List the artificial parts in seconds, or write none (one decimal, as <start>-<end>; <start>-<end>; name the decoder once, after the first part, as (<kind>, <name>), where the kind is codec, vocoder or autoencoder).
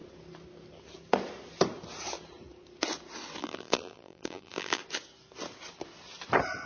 3.4-4.8 (vocoder, BigVGAN v2)